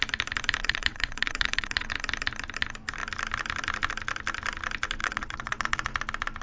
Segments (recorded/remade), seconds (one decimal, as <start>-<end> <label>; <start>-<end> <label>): 0.0-0.6 recorded; 0.6-1.9 remade; 1.9-5.0 recorded; 5.0-5.9 remade; 5.9-6.4 recorded